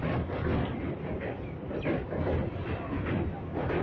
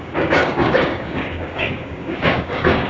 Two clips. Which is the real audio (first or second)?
first